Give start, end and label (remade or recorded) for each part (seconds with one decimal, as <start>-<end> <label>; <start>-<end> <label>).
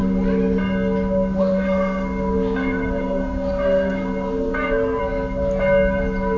0.0-1.4 recorded; 1.4-5.0 remade; 5.0-6.4 recorded